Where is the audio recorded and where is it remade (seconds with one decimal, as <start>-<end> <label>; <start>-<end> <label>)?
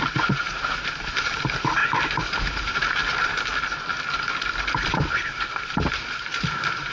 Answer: 0.0-1.8 remade; 1.8-2.4 recorded; 2.4-3.0 remade; 3.0-4.9 recorded; 4.9-6.9 remade